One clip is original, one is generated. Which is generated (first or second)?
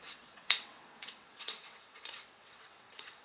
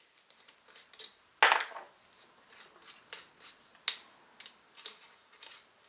first